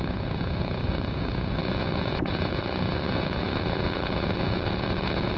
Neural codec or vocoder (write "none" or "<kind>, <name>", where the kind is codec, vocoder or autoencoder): vocoder, Vocos